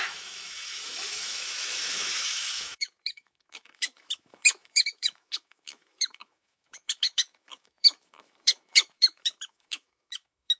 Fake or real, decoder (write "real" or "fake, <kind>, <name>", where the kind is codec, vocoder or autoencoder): fake, autoencoder, DAC-VAE